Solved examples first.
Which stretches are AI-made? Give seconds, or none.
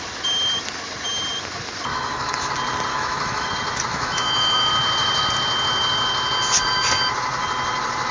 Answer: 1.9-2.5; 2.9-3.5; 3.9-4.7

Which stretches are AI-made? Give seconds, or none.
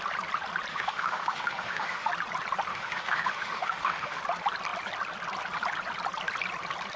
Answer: 0.7-2.1; 2.7-4.2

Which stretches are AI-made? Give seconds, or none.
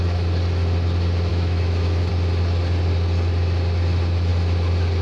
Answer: 1.3-2.1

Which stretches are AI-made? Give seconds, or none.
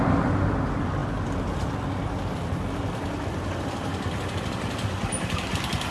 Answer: none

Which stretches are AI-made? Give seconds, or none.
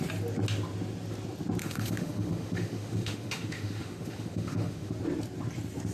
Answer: 1.6-4.9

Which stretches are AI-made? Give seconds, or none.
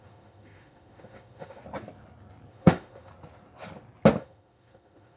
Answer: 0.0-1.6; 2.5-3.1; 4.2-5.2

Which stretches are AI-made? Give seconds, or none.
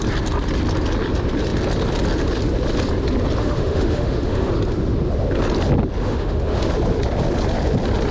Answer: 3.4-4.5; 6.0-6.7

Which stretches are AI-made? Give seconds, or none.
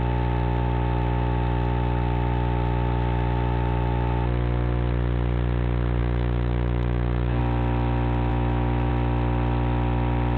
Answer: 6.0-7.4; 8.3-8.9